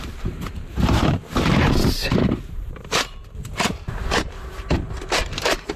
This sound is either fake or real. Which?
fake